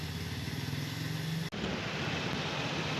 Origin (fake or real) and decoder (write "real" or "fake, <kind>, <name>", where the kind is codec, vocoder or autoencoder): real